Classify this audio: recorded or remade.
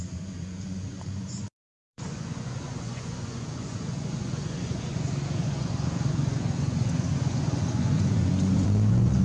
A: remade